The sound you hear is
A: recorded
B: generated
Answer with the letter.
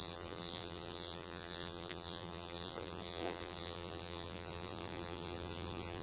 B